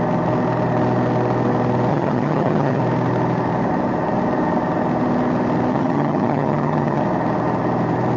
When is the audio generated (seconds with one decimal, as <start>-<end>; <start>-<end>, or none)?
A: 1.9-2.8; 5.7-7.0